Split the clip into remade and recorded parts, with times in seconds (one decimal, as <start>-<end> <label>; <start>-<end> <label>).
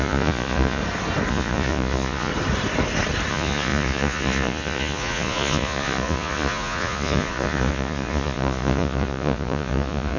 0.0-0.8 remade; 0.8-1.3 recorded; 1.3-2.3 remade; 2.3-3.3 recorded; 3.3-10.2 remade